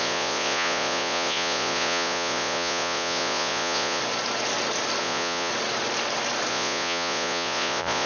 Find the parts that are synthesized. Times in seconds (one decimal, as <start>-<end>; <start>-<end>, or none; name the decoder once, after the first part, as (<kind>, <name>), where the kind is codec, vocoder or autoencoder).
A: 0.0-4.0 (vocoder, Vocos); 5.0-5.5; 6.5-8.1